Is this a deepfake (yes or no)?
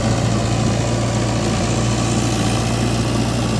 no